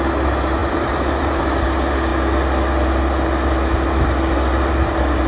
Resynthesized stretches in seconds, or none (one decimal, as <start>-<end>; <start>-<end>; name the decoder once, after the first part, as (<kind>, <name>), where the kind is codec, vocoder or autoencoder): 0.6-1.4 (vocoder, BigVGAN v2)